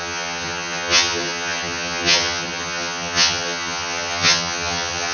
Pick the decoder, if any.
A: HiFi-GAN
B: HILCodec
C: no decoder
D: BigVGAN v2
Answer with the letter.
A